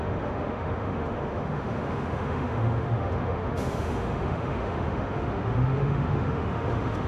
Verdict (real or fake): fake